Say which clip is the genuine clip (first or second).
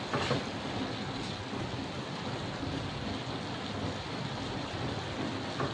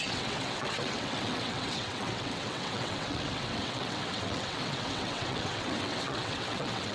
first